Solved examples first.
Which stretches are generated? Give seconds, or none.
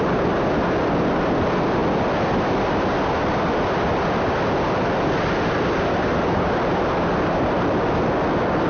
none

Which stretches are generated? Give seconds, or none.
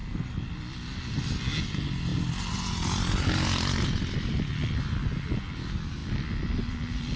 none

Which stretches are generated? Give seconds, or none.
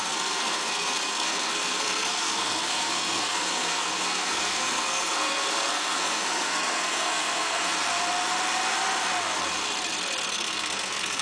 0.0-7.7 (codec, SNAC); 10.3-11.2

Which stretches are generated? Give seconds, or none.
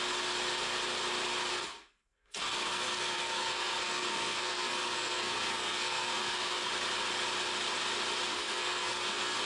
1.5-6.7 (codec, SNAC); 8.3-9.4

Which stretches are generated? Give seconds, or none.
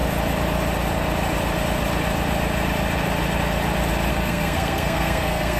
4.1-5.6 (codec, SNAC)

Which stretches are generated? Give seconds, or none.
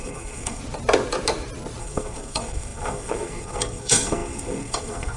0.0-0.6 (codec, SNAC); 1.8-5.2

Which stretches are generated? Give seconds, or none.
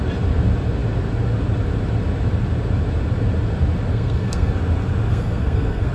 3.9-4.5 (codec, SNAC); 5.1-5.9